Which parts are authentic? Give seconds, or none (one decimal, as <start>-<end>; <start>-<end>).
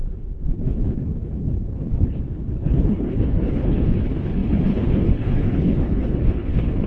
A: none